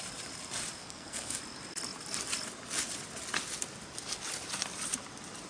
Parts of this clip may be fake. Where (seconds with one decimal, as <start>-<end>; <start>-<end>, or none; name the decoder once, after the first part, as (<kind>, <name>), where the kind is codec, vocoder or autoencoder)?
0.8-1.4 (codec, SNAC)